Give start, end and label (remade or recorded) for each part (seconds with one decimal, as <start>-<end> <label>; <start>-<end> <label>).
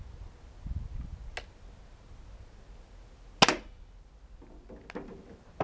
0.0-5.6 recorded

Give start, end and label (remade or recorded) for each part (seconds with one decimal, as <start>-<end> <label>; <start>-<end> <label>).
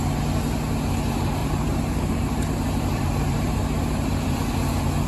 0.0-1.4 recorded; 1.4-4.5 remade; 4.5-5.1 recorded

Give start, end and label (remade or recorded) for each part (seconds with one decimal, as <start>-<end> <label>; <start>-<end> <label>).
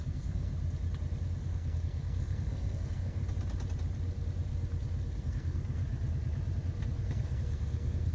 0.0-0.5 remade; 0.5-1.4 recorded; 1.4-3.2 remade; 3.2-5.2 recorded; 5.2-5.8 remade; 5.8-6.8 recorded; 6.8-8.1 remade